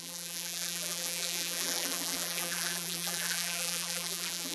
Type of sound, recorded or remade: remade